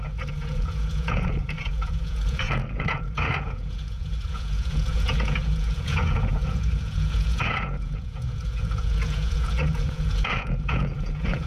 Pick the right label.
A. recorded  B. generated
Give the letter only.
B